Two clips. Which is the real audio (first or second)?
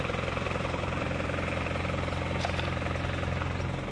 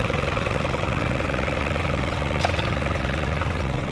first